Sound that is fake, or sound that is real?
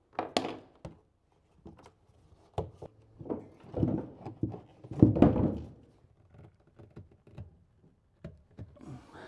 real